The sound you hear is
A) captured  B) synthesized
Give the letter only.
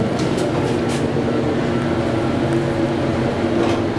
A